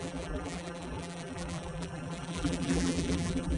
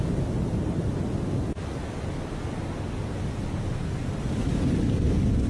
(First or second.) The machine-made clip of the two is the first